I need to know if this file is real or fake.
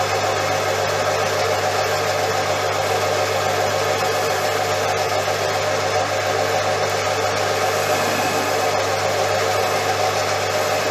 real